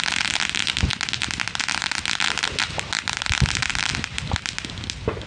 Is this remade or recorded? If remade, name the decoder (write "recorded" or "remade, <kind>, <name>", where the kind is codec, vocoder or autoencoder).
recorded